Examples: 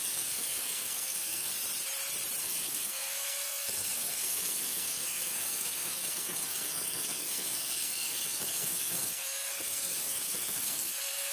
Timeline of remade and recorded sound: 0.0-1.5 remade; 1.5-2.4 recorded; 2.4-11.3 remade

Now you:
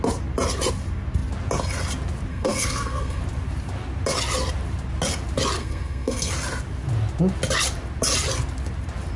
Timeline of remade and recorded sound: 0.0-2.3 recorded; 2.3-3.2 remade; 3.2-5.6 recorded; 5.6-6.3 remade; 6.3-9.2 recorded

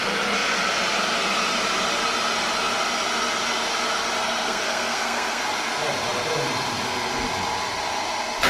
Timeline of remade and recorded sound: 0.0-4.2 recorded; 4.2-5.4 remade; 5.4-8.5 recorded